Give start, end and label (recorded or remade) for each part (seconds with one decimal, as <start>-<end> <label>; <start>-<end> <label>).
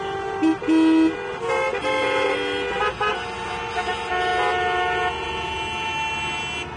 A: 0.0-6.8 recorded